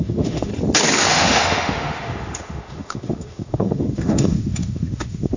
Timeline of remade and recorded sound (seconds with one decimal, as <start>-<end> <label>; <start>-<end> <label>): 0.0-0.5 remade; 0.5-1.1 recorded; 1.1-5.4 remade